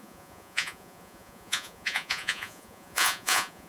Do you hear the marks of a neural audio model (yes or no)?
yes